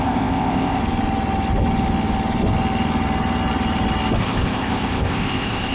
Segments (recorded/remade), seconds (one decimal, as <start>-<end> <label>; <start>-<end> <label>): 0.0-0.8 remade; 0.8-4.2 recorded; 4.2-5.7 remade

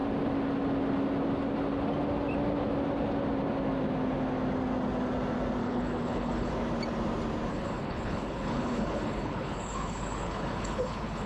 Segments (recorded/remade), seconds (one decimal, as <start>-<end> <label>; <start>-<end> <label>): 0.0-5.6 recorded; 5.6-6.5 remade; 6.5-7.5 recorded; 7.5-11.3 remade

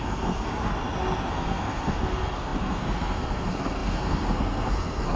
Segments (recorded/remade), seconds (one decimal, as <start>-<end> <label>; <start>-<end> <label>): 0.0-0.7 remade; 0.7-1.3 recorded; 1.3-5.2 remade

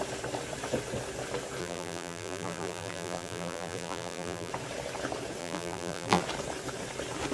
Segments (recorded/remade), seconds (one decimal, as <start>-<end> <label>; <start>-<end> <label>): 0.0-1.6 recorded; 1.6-4.5 remade; 4.5-5.4 recorded; 5.4-6.2 remade; 6.2-7.3 recorded

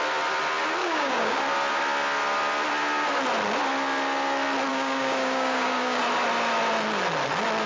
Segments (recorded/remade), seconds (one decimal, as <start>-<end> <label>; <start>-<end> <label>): 0.0-0.8 recorded; 0.8-1.4 remade; 1.4-4.7 recorded; 4.7-6.0 remade; 6.0-7.7 recorded

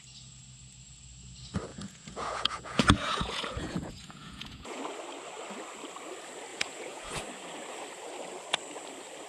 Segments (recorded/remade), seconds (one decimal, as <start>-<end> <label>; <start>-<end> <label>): 0.0-1.7 recorded; 1.7-4.8 remade; 4.8-6.5 recorded; 6.5-7.2 remade; 7.2-9.3 recorded

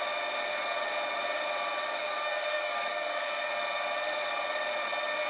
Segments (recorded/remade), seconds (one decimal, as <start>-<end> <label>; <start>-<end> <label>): 0.0-2.0 recorded; 2.0-3.5 remade; 3.5-5.3 recorded